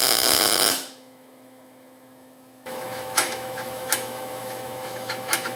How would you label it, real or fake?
fake